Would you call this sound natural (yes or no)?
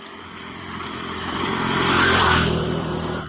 no